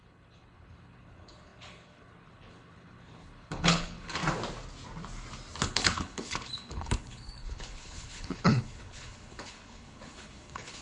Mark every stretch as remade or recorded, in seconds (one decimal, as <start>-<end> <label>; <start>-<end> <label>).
0.0-4.2 remade; 4.2-5.6 recorded; 5.6-10.8 remade